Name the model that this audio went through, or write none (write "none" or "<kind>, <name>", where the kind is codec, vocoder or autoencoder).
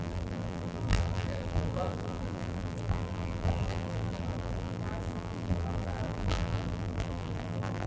vocoder, BigVGAN v2